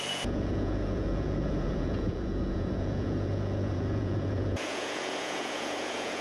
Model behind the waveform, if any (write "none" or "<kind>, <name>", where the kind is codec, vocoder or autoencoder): vocoder, Vocos